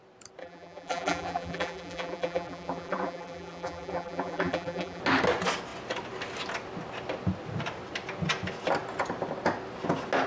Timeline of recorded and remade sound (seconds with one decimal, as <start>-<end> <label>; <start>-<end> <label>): 0.0-0.4 recorded; 0.4-5.0 remade; 5.0-10.3 recorded